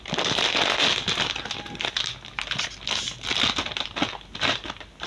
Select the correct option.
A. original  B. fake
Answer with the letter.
A